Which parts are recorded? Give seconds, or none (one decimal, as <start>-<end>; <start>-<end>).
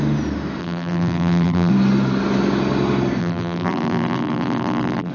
0.0-0.6; 1.7-3.2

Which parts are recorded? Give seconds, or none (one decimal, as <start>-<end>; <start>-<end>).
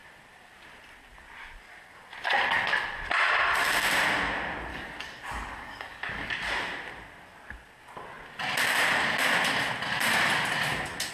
0.0-4.7; 6.3-11.1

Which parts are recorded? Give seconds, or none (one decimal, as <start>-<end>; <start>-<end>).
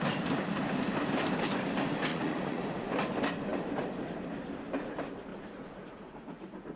0.0-2.1; 2.6-5.3